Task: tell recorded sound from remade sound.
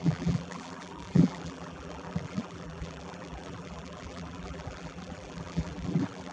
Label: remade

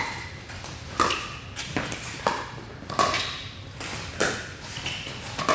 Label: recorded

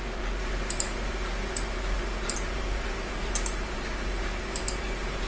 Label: remade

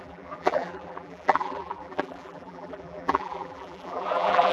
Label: remade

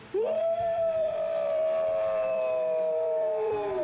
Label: remade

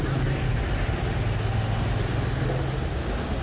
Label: recorded